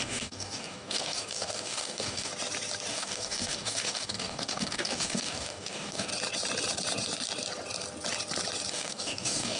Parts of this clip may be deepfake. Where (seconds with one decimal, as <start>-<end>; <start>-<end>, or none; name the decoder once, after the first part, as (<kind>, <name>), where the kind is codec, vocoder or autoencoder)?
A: 0.0-2.3 (codec, DAC); 2.9-6.1; 8.7-9.6